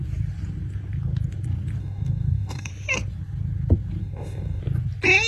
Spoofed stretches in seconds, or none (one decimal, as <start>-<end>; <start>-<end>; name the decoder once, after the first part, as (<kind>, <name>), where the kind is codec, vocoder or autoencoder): 1.8-2.7 (codec, DAC); 4.0-4.6